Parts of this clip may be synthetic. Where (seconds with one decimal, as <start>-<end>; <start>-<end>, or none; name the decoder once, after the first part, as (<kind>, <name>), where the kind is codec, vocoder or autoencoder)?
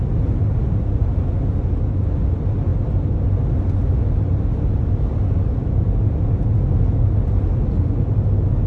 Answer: none